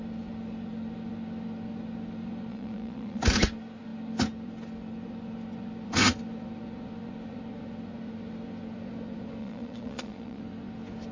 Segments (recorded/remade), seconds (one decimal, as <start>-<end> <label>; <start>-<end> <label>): 0.0-2.5 recorded; 2.5-3.2 remade; 3.2-9.4 recorded; 9.4-10.4 remade; 10.4-11.1 recorded